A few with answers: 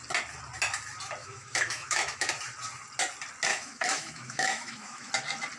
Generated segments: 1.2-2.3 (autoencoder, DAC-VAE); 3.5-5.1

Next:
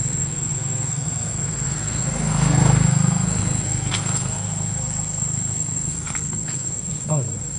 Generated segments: 0.0-7.6 (codec, SNAC)

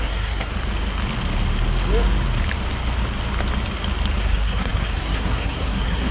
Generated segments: 0.0-0.5 (codec, SNAC); 4.2-6.1

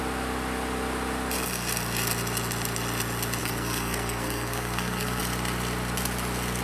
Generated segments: 3.4-5.2 (codec, SNAC)

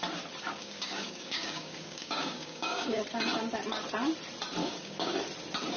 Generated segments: 0.6-3.0 (codec, DAC); 4.6-5.1

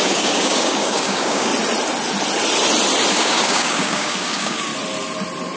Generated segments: 0.0-1.5 (codec, DAC); 3.1-4.7